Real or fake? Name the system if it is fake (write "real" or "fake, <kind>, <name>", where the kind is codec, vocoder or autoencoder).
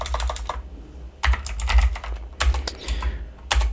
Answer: real